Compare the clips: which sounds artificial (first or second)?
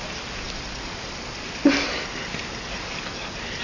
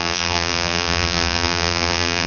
second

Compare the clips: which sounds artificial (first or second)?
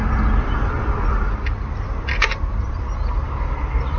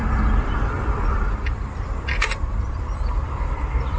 second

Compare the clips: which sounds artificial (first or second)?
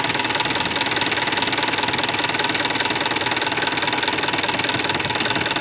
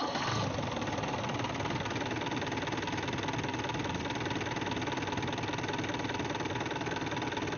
second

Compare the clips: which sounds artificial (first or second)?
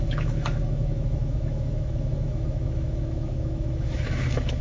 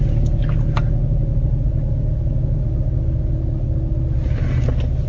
first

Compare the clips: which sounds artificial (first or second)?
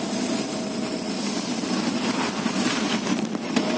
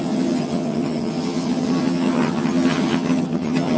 second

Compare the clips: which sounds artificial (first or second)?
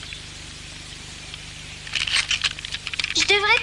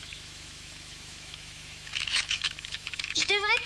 second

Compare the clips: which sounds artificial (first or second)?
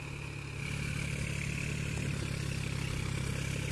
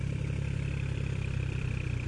second